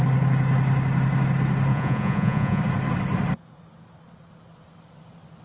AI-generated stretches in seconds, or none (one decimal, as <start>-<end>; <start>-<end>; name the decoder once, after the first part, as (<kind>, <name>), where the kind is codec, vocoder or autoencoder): 1.7-2.6 (vocoder, Vocos)